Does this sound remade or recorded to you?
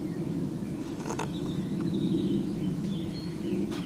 remade